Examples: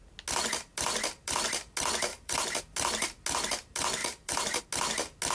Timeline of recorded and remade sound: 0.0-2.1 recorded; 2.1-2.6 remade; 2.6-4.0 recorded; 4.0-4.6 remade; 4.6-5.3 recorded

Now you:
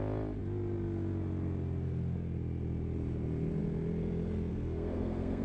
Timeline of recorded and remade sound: 0.0-4.5 recorded; 4.5-5.4 remade

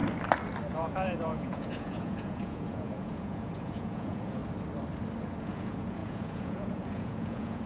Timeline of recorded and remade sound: 0.0-0.7 recorded; 0.7-4.4 remade; 4.4-5.4 recorded; 5.4-7.7 remade

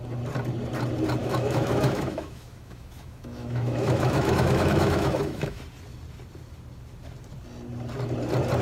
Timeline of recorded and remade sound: 0.0-1.2 recorded; 1.2-5.6 remade; 5.6-8.6 recorded

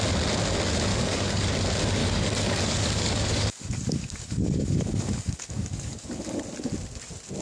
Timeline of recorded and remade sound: 0.0-0.9 recorded; 0.9-1.5 remade; 1.5-2.0 recorded; 2.0-6.4 remade; 6.4-7.4 recorded